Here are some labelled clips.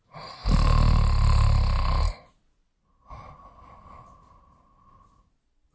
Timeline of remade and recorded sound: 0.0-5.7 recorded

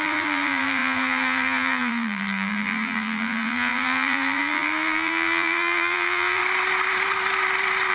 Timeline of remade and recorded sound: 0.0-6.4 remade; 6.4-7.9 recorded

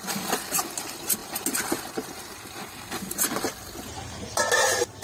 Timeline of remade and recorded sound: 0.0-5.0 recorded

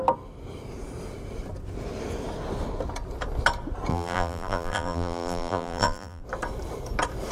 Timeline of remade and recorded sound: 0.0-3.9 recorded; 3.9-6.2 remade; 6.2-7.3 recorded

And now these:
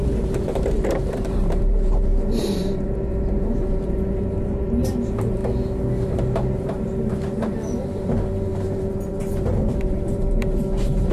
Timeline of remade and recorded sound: 0.0-5.4 remade; 5.4-6.0 recorded; 6.0-11.1 remade